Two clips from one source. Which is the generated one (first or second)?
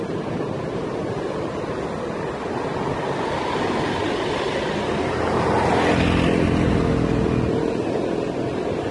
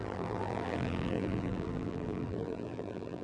second